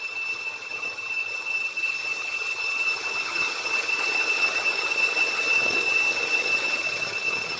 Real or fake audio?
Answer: fake